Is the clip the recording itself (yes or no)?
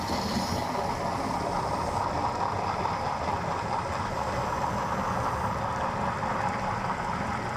yes